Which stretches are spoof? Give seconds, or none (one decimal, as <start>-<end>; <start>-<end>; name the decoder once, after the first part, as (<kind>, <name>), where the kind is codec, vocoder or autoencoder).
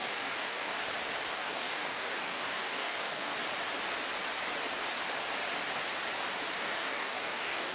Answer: 0.0-0.7 (codec, DAC); 1.3-3.3; 6.6-7.7